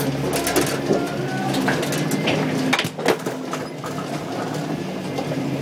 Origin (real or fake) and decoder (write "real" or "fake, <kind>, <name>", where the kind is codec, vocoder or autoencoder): real